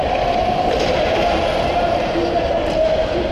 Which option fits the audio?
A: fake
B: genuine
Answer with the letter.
B